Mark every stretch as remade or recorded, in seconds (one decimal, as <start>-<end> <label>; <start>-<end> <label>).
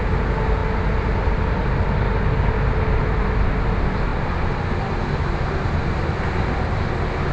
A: 0.0-7.3 recorded